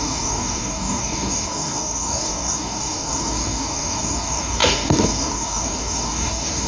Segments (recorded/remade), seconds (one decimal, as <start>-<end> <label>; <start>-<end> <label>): 0.0-6.7 remade